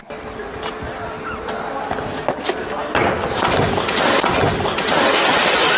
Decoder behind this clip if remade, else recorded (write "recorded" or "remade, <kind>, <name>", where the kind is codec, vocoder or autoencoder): recorded